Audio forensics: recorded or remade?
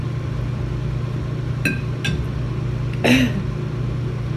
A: recorded